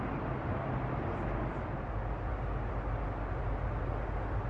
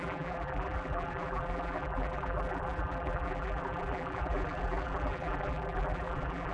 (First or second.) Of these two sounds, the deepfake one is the second